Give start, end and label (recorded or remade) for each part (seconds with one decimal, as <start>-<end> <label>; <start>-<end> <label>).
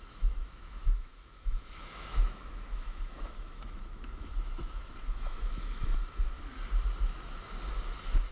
0.0-5.9 remade; 5.9-8.3 recorded